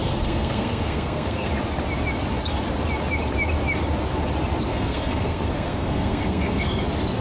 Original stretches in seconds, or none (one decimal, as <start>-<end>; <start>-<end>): 1.5-4.7; 6.8-7.2